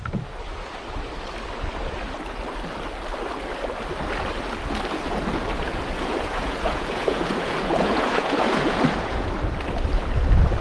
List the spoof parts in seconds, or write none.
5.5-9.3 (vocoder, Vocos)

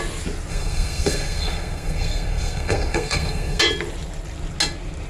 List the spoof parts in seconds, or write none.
0.5-3.6 (codec, SNAC)

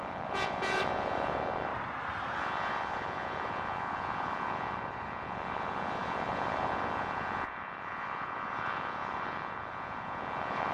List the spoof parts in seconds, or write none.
0.0-1.7 (vocoder, Vocos); 2.4-10.7

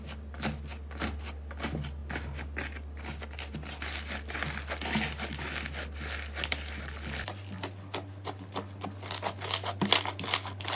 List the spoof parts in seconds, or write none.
none

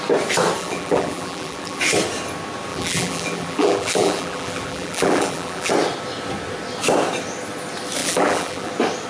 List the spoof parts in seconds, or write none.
0.6-1.8 (vocoder, BigVGAN v2); 2.7-5.7; 8.0-8.7

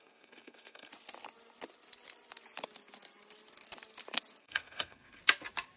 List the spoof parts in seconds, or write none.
0.0-0.9 (codec, SNAC); 4.4-5.2

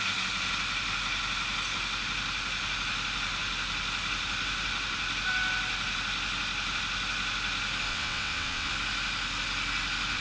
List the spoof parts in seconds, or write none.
7.9-8.7 (vocoder, WaveNeXt)

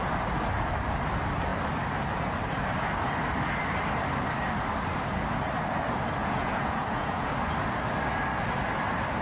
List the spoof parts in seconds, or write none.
6.2-7.3 (vocoder, Vocos)